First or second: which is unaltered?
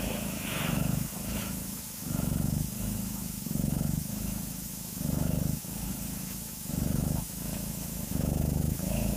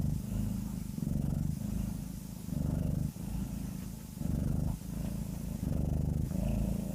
second